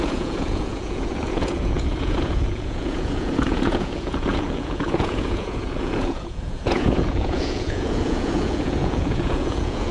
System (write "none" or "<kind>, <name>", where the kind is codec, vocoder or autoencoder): vocoder, Vocos